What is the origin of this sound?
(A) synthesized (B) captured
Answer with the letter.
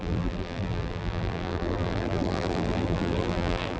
A